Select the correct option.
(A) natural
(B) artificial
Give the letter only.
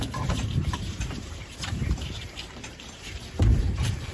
B